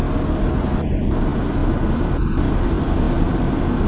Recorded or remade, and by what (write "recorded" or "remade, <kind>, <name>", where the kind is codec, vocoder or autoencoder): recorded